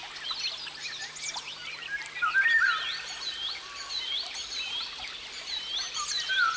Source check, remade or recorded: recorded